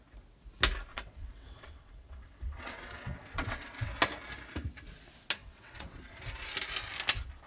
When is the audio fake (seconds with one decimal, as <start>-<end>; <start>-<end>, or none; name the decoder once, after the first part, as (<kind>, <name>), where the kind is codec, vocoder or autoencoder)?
0.9-3.9 (vocoder, WaveNeXt); 5.4-6.2